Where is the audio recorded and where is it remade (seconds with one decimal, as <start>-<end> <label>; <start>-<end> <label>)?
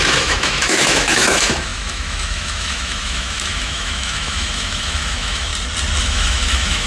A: 0.0-5.5 remade; 5.5-6.0 recorded; 6.0-6.9 remade